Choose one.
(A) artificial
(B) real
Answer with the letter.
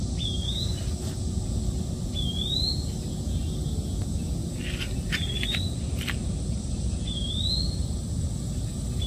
B